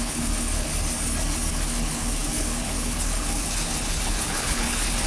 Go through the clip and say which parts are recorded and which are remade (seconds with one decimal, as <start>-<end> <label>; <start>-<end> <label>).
0.0-0.7 remade; 0.7-1.5 recorded; 1.5-5.1 remade